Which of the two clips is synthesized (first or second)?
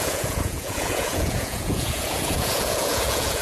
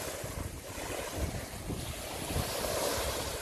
first